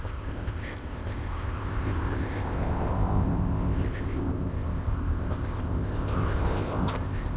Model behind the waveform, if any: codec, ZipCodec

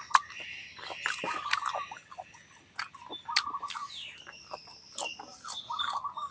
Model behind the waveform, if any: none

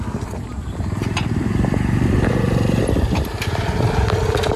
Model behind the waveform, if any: none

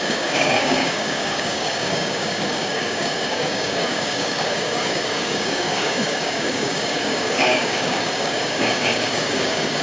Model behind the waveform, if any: codec, DAC